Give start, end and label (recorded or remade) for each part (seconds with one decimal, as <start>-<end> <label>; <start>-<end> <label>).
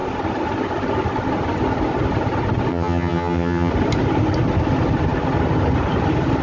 0.0-2.7 recorded; 2.7-3.7 remade; 3.7-6.4 recorded